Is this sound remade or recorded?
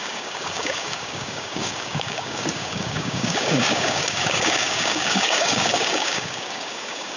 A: remade